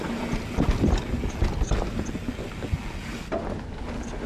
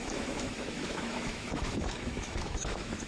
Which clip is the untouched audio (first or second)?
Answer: first